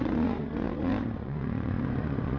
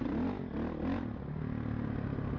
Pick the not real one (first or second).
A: first